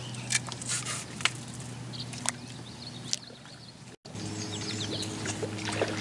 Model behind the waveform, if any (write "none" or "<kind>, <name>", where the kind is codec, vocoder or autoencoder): none